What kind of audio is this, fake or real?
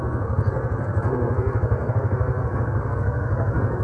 fake